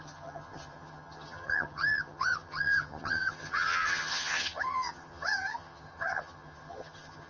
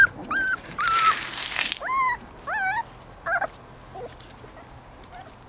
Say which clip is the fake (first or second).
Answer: first